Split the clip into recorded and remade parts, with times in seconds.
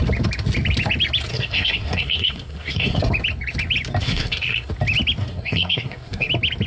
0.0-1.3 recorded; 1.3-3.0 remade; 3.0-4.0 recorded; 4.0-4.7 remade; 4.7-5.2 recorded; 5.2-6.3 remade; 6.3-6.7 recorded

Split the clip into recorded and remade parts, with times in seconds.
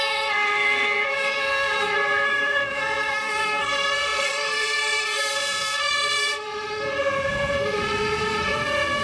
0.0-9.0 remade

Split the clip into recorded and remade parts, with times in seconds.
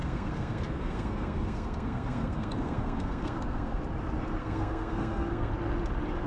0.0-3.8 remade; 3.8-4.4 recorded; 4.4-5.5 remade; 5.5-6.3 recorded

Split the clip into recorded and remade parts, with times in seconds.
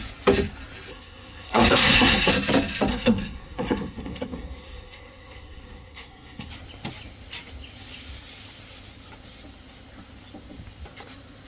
0.0-0.9 recorded; 0.9-2.3 remade; 2.3-2.9 recorded; 2.9-6.5 remade; 6.5-11.5 recorded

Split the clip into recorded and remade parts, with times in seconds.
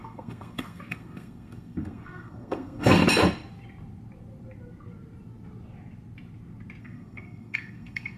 0.0-3.0 remade; 3.0-6.8 recorded; 6.8-8.2 remade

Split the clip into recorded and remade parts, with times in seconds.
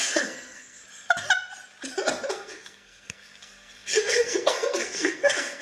0.0-0.8 remade; 0.8-2.3 recorded; 2.3-5.6 remade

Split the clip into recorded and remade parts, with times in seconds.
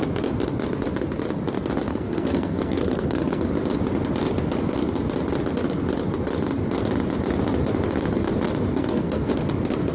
0.0-1.9 recorded; 1.9-3.4 remade; 3.4-8.7 recorded; 8.7-9.3 remade; 9.3-9.9 recorded